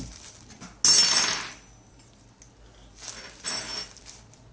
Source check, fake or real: real